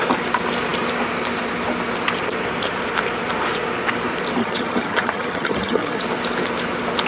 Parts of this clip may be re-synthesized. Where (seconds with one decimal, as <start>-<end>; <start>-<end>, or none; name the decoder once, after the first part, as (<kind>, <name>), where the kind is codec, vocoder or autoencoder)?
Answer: 4.4-6.0 (vocoder, HiFi-GAN)